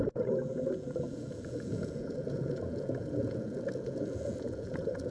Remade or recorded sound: remade